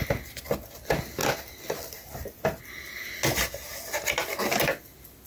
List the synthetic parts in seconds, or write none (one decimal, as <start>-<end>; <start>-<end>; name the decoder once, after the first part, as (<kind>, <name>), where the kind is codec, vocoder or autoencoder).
1.2-2.6 (vocoder, BigVGAN v2)